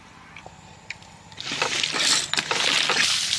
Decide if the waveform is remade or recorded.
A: recorded